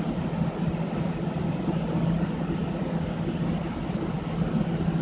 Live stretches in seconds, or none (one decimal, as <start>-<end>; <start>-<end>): 0.0-5.0